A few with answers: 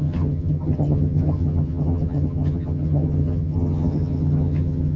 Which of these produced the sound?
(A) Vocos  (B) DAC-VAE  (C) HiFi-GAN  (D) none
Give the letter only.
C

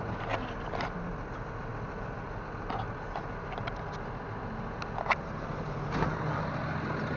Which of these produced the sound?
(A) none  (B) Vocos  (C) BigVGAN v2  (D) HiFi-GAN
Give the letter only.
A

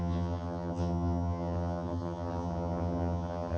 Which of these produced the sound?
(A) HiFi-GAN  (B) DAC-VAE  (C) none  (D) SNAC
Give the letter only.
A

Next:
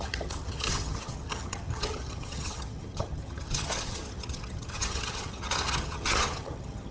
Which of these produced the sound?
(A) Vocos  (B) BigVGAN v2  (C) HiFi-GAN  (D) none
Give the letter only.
C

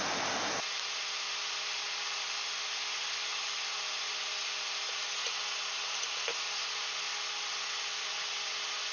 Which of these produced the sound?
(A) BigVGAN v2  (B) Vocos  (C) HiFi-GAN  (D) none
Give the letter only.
D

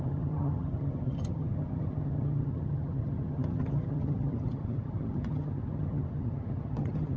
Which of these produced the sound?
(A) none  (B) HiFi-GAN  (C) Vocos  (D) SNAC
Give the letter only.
B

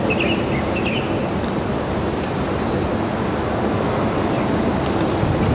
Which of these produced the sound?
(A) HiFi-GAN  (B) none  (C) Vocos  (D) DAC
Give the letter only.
B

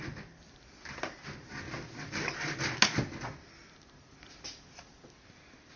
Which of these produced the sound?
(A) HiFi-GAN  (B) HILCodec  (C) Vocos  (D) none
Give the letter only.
D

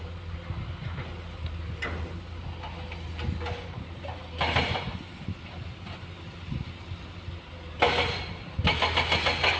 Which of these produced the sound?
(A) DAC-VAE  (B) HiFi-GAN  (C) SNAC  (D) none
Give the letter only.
D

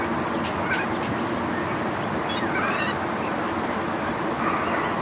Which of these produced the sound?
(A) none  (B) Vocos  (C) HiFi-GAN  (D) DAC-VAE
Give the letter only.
A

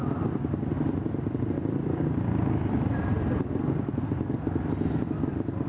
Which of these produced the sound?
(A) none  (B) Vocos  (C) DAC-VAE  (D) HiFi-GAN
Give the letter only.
A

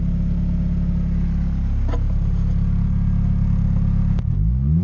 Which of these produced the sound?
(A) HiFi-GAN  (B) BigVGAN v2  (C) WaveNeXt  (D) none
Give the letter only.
D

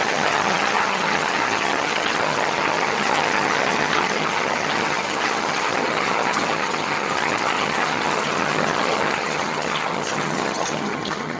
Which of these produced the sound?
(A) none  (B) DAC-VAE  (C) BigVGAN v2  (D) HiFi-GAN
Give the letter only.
D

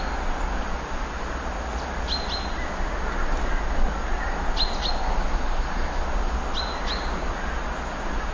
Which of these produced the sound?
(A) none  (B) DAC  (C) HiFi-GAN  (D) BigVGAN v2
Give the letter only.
A